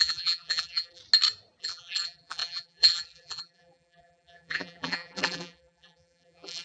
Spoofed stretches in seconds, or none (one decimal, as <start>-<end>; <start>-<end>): 0.0-1.0; 1.6-6.6